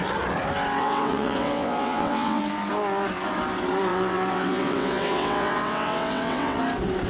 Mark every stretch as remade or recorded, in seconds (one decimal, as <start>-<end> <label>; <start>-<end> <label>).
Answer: 0.0-0.8 recorded; 0.8-2.4 remade; 2.4-3.9 recorded; 3.9-6.6 remade; 6.6-7.1 recorded